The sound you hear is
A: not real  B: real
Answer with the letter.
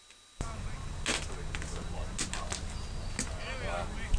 B